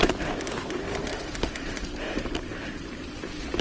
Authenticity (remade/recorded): recorded